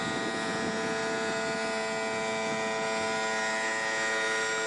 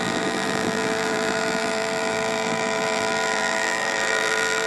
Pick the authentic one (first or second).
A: first